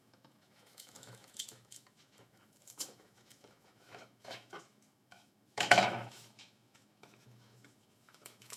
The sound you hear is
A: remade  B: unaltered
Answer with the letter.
A